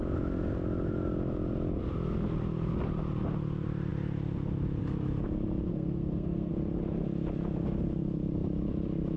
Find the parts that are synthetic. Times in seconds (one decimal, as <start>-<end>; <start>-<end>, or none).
5.7-6.5